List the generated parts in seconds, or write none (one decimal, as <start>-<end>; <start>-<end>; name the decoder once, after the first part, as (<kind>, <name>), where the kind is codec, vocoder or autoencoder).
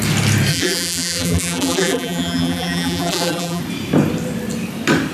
0.5-3.6 (vocoder, BigVGAN v2)